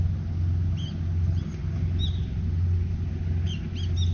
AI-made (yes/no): no